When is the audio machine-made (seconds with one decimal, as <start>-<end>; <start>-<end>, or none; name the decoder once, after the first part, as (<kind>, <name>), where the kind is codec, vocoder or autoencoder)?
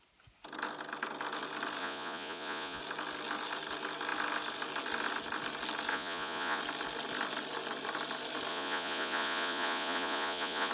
1.8-2.8 (vocoder, Vocos); 5.9-6.6; 8.5-10.7